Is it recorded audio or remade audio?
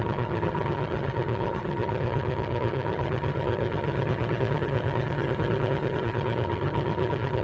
remade